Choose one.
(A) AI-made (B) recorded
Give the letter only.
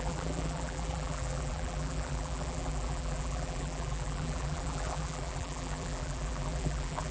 A